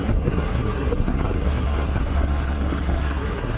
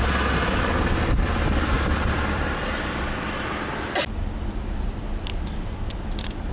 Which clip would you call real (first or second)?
second